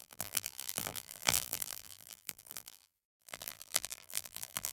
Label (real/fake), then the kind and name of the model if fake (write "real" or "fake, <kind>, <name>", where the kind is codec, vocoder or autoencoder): fake, vocoder, BigVGAN v2